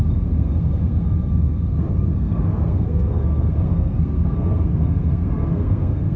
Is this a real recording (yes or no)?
no